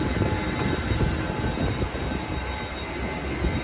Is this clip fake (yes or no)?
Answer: no